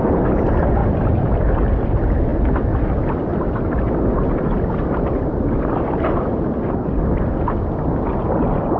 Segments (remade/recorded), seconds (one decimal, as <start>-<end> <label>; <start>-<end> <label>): 0.0-8.8 recorded